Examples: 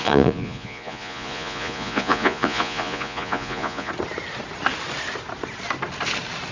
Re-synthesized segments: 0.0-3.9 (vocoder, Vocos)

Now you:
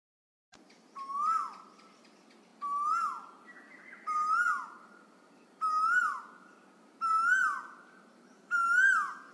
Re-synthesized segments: none

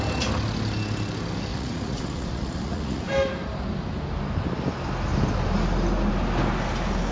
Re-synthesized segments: 1.5-3.1 (vocoder, Vocos)

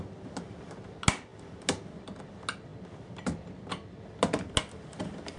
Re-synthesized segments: none

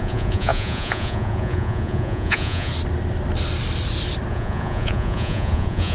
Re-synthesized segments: 0.0-2.7 (vocoder, Vocos); 4.3-5.9

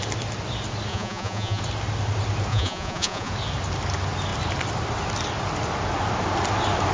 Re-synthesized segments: 0.9-1.6 (vocoder, Vocos); 2.5-3.3